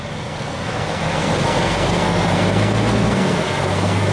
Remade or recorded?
remade